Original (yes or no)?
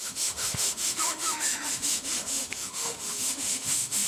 no